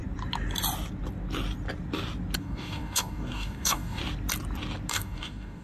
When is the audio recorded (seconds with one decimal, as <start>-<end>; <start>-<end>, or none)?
0.0-2.4; 4.0-4.9